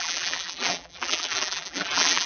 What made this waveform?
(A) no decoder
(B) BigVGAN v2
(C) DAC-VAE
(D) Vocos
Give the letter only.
B